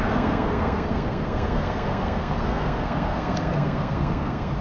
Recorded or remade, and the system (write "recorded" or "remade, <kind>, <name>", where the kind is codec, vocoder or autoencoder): remade, codec, SNAC